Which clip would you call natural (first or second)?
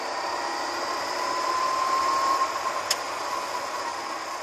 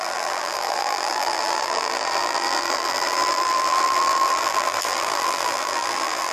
first